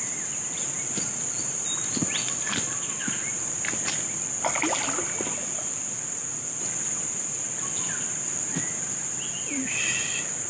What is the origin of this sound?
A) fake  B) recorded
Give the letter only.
A